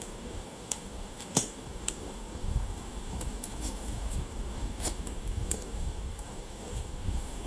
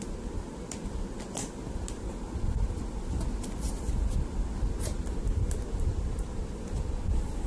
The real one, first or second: second